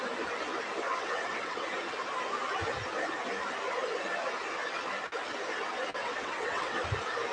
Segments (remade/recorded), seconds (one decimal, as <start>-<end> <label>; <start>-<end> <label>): 0.0-0.9 recorded; 0.9-1.7 remade; 1.7-6.0 recorded; 6.0-6.8 remade; 6.8-7.3 recorded

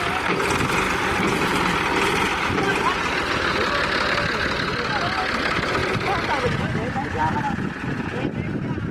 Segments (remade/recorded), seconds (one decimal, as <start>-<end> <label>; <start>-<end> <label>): 0.0-5.8 recorded; 5.8-7.2 remade; 7.2-8.9 recorded

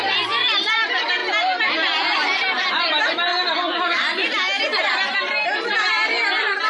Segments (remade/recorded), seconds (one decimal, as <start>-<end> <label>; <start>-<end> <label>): 0.0-1.2 remade; 1.2-2.7 recorded; 2.7-3.3 remade; 3.3-5.2 recorded; 5.2-6.7 remade

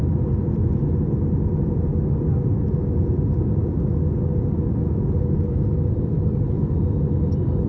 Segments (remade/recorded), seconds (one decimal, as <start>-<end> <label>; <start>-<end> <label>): 0.0-7.7 recorded

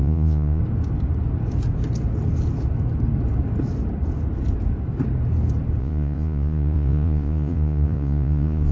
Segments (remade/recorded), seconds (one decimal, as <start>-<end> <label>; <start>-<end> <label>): 0.0-0.6 remade; 0.6-5.8 recorded; 5.8-8.7 remade